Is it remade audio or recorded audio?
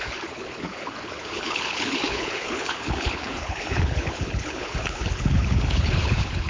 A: remade